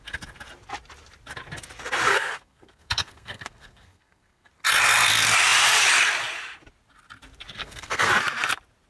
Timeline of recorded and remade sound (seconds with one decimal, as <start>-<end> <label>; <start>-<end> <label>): 0.0-2.1 recorded; 2.1-4.5 remade; 4.5-7.6 recorded; 7.6-8.1 remade; 8.1-8.9 recorded